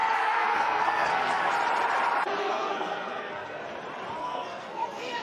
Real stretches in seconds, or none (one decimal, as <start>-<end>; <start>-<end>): 1.5-2.4; 3.6-4.2